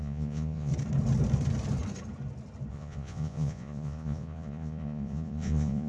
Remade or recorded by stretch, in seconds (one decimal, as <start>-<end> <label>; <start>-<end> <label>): 0.0-0.7 remade; 0.7-2.7 recorded; 2.7-5.9 remade